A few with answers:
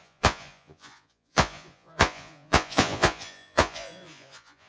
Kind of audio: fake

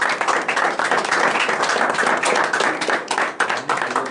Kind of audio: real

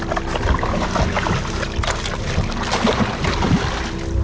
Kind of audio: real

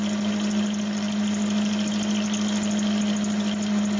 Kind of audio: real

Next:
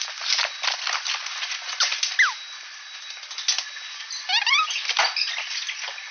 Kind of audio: real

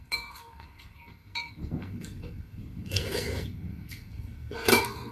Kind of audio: fake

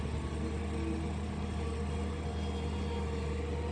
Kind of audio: real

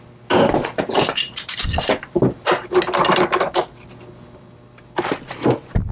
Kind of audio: real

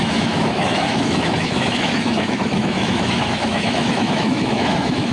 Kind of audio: fake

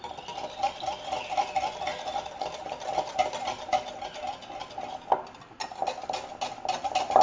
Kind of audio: real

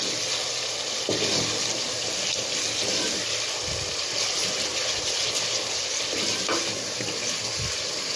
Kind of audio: real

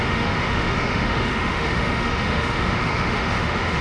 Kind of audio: fake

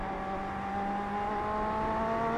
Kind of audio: real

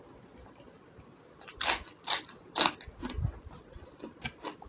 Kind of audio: real